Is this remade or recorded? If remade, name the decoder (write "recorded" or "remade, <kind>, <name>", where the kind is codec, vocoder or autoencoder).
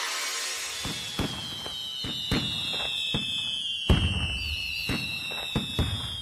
recorded